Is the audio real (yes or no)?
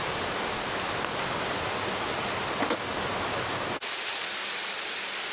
yes